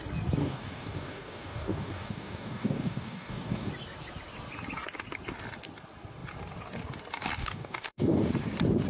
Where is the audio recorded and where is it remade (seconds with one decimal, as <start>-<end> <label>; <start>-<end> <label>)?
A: 0.0-0.4 recorded; 0.4-3.7 remade; 3.7-7.4 recorded; 7.4-8.3 remade; 8.3-8.9 recorded